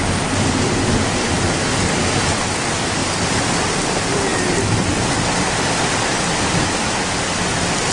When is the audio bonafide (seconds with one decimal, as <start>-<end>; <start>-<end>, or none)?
0.0-3.0; 3.9-7.9